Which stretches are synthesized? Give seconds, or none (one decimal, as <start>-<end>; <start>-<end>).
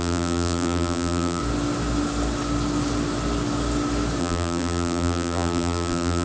0.0-1.4; 4.2-6.2